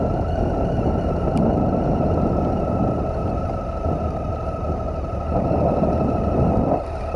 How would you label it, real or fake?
real